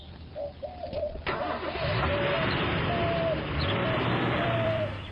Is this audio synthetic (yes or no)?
yes